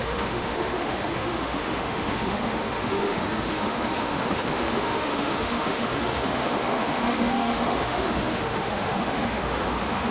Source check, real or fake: fake